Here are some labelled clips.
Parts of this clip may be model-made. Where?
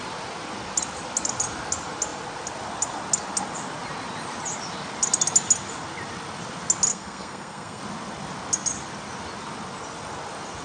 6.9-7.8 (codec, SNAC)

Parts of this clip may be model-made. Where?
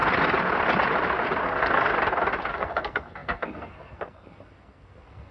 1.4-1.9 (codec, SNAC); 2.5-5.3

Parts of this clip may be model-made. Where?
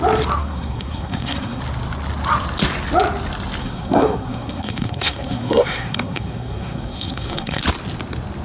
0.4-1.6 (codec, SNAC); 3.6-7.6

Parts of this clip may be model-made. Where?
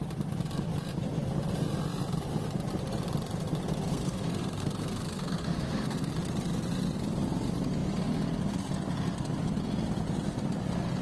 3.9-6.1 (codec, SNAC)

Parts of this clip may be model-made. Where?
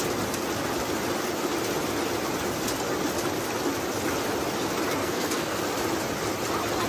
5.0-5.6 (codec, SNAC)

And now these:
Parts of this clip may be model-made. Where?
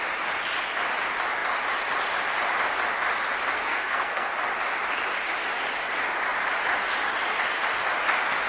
3.5-4.3 (codec, SNAC)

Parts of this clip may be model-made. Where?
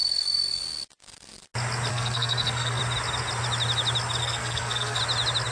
0.0-0.6 (codec, SNAC); 1.9-2.8; 4.2-5.0